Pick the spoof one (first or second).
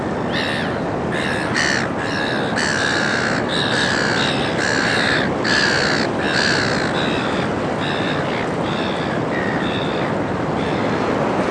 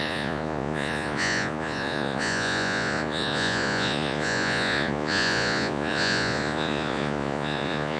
second